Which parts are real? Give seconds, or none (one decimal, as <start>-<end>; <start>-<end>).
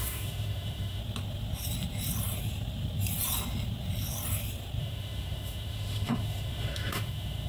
1.0-4.8